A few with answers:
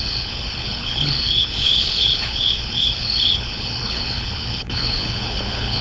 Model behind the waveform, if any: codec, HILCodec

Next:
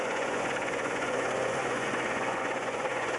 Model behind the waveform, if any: vocoder, Vocos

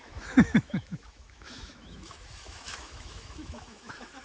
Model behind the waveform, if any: autoencoder, DAC-VAE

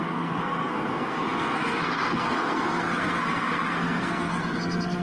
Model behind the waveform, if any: codec, SNAC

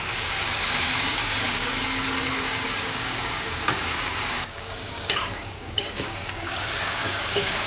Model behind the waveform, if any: codec, DAC